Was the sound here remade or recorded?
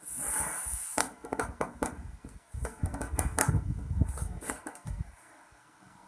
remade